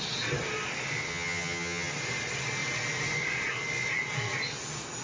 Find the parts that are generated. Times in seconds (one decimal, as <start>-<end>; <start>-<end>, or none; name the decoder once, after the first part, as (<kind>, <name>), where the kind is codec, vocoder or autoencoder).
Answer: 1.1-1.9 (vocoder, HiFi-GAN)